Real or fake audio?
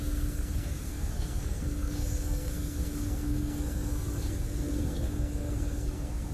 fake